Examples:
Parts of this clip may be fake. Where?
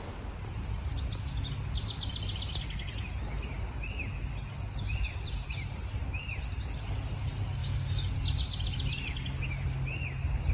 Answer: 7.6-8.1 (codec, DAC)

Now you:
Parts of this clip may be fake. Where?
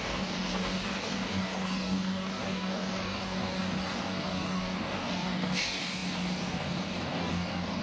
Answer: 0.0-7.8 (codec, DAC)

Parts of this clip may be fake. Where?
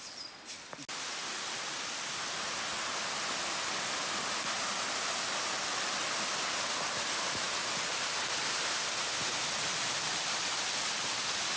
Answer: none